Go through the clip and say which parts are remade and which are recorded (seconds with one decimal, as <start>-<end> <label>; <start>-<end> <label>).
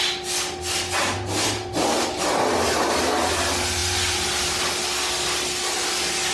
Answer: 0.0-6.3 recorded